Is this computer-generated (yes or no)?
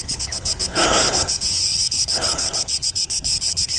yes